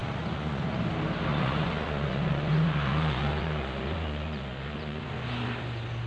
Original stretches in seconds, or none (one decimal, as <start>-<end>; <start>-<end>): 0.8-1.3; 5.0-6.1